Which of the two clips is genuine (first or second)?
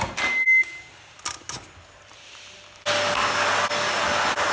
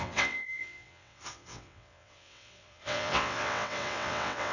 first